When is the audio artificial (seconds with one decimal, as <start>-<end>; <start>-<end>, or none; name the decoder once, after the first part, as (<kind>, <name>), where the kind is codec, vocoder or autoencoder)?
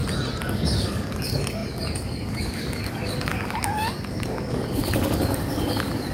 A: 0.5-6.1 (codec, DAC)